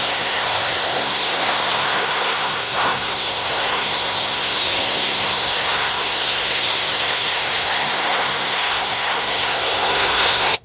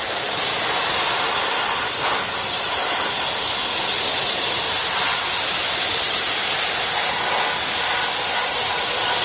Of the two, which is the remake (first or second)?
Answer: first